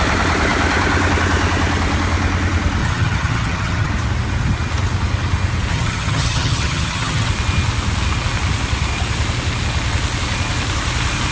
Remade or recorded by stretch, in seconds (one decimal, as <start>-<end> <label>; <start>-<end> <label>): 0.0-2.8 recorded; 2.8-3.9 remade; 3.9-5.7 recorded; 5.7-7.3 remade; 7.3-11.3 recorded